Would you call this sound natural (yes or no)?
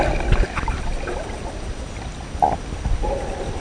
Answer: yes